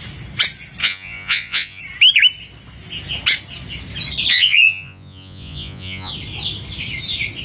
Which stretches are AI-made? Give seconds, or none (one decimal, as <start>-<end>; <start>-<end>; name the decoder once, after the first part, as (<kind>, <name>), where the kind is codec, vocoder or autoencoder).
0.8-1.8 (vocoder, Vocos); 4.3-6.1